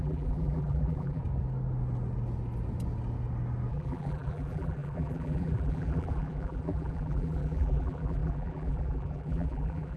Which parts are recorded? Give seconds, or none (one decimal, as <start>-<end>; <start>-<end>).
1.2-3.7